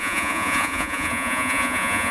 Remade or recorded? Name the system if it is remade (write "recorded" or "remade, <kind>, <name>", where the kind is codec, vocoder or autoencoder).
remade, vocoder, Vocos